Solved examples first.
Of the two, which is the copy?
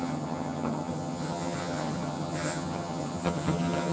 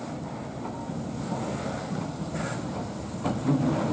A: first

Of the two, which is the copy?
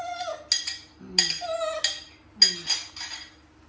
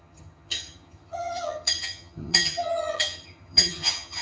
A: second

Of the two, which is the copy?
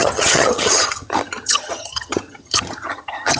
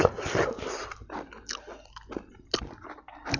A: first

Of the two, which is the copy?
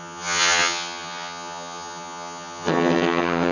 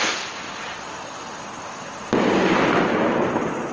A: first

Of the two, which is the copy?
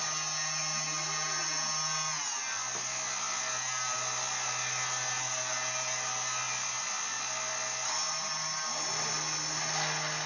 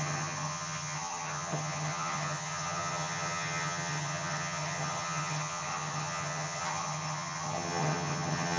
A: second